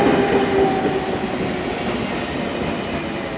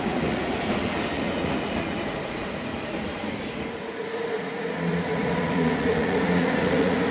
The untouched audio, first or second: first